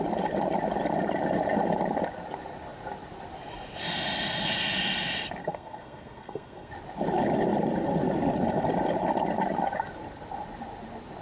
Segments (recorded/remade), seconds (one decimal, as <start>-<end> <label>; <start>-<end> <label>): 0.0-5.4 recorded; 5.4-6.7 remade; 6.7-11.2 recorded